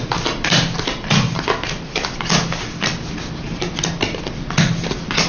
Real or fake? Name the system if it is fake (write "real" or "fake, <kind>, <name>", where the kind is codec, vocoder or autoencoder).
real